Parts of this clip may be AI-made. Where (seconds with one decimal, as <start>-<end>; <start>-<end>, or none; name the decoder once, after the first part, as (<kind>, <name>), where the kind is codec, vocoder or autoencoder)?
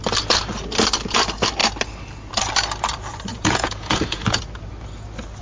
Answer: 3.3-4.4 (vocoder, Vocos)